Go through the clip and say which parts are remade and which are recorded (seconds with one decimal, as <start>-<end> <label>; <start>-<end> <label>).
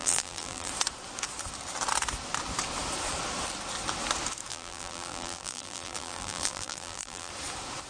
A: 0.0-0.7 remade; 0.7-4.5 recorded; 4.5-7.3 remade; 7.3-7.9 recorded